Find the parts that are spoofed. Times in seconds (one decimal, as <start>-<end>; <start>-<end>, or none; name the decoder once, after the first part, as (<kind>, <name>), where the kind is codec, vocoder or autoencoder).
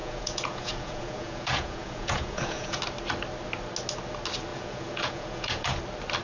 0.0-2.8 (vocoder, Vocos); 4.5-5.8